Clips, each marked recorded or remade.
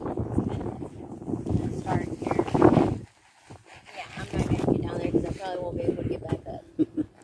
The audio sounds recorded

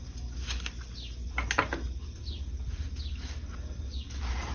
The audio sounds recorded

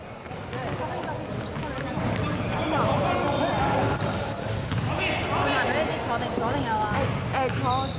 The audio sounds recorded